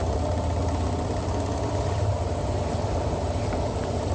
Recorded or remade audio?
recorded